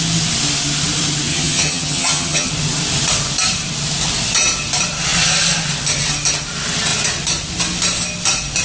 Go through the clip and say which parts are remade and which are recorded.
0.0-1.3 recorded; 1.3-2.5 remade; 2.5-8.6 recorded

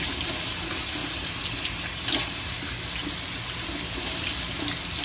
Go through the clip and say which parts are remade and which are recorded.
0.0-5.0 recorded